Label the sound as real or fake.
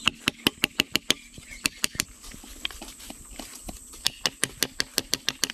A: real